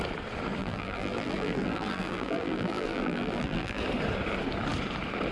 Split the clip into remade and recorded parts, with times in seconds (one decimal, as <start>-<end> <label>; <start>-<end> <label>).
0.0-0.6 recorded; 0.6-3.8 remade; 3.8-5.3 recorded